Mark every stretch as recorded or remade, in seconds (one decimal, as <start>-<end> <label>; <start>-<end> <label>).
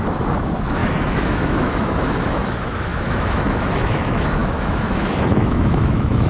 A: 0.0-6.3 remade